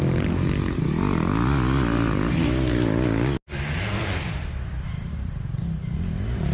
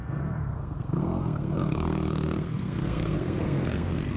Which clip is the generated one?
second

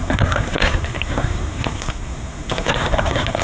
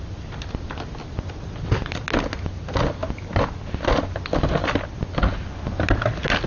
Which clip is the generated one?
first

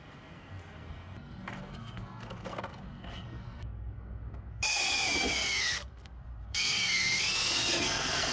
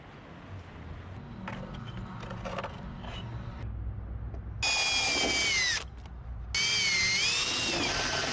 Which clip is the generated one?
first